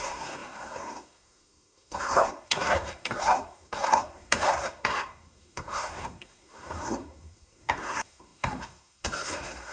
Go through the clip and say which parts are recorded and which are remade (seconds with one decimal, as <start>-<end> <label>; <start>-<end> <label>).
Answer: 0.0-9.7 remade